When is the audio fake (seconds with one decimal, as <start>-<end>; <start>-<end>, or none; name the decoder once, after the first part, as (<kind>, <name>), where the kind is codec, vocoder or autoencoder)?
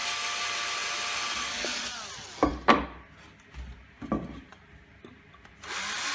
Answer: none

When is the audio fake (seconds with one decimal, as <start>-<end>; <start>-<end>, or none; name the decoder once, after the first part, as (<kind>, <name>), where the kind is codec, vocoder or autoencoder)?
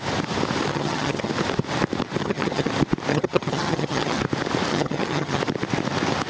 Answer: 0.7-1.3 (vocoder, HiFi-GAN); 2.2-2.7; 3.1-4.2; 4.7-5.4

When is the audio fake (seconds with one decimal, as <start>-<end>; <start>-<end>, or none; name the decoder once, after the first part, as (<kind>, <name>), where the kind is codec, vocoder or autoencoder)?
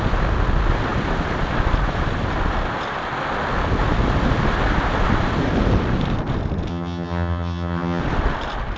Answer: 6.7-8.0 (vocoder, HiFi-GAN)